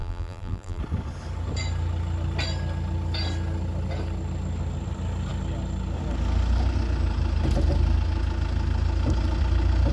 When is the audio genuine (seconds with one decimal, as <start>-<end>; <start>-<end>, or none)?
0.8-9.9